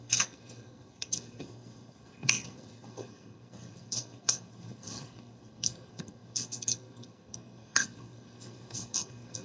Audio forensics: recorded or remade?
remade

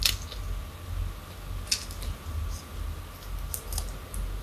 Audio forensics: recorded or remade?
recorded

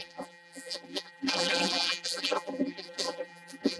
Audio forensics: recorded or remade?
remade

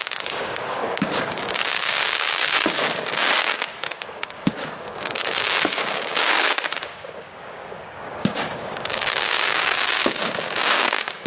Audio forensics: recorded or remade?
remade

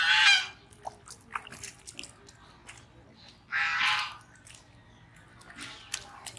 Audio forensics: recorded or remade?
recorded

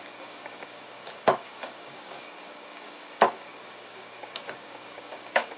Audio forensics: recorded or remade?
remade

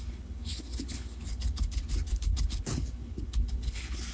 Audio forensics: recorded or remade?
remade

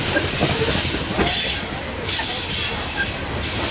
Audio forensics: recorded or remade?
recorded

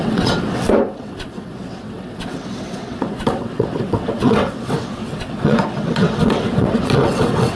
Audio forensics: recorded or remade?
remade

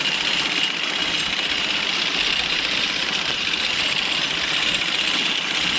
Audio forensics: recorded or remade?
recorded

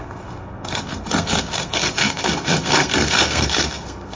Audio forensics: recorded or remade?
remade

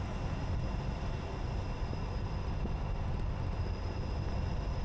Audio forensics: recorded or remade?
recorded